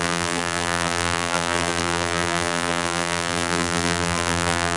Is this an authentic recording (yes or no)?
no